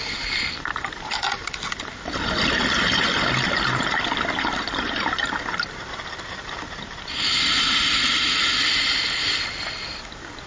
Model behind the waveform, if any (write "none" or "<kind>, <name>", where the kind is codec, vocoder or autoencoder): none